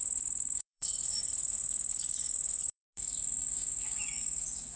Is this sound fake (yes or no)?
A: yes